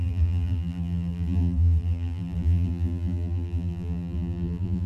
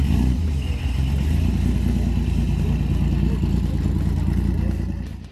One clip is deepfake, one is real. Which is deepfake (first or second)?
first